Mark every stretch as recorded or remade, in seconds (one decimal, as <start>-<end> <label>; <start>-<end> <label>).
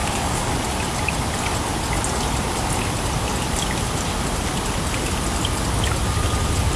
0.0-0.5 remade; 0.5-6.8 recorded